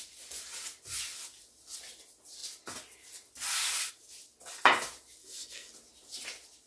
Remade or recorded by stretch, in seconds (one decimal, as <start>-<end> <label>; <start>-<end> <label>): 0.0-5.2 recorded; 5.2-5.7 remade; 5.7-6.7 recorded

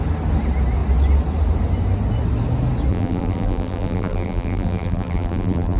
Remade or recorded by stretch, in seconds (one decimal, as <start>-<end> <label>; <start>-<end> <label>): 0.0-2.9 recorded; 2.9-5.8 remade